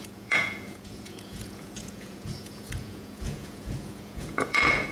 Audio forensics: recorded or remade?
remade